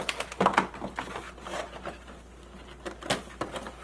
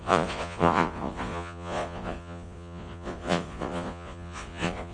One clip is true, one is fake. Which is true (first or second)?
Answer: first